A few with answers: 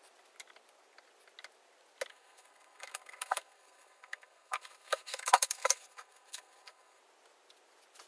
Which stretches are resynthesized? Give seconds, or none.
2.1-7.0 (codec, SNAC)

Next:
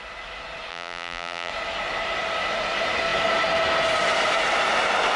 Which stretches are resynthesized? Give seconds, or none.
0.7-1.5 (vocoder, BigVGAN v2)

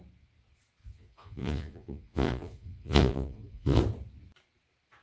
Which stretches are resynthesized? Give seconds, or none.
0.8-3.8 (vocoder, Vocos)

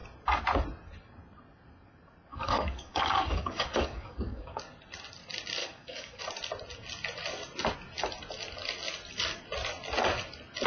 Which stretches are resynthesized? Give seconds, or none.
2.3-4.6 (codec, DAC); 5.6-6.2

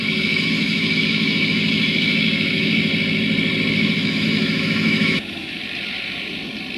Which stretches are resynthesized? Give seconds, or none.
0.0-2.9 (autoencoder, DAC-VAE); 3.7-5.6

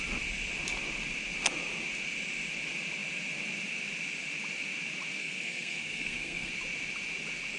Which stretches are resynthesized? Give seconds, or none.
5.2-6.5 (codec, SNAC)

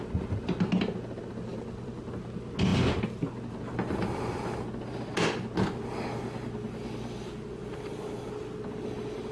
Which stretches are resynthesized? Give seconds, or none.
1.5-2.0 (vocoder, BigVGAN v2)

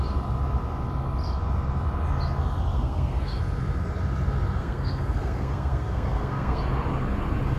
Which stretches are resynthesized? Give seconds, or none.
2.7-3.4 (codec, SNAC); 4.6-6.6